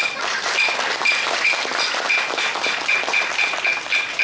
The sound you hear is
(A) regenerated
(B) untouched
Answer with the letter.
B